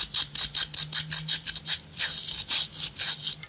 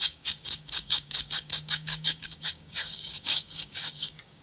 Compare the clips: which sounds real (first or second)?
first